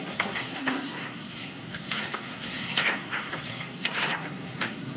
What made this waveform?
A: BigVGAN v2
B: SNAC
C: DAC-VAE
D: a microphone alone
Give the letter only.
B